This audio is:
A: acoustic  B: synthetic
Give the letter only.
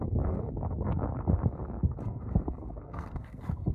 B